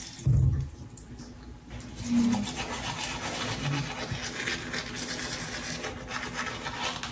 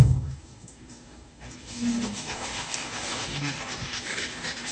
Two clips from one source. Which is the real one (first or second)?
first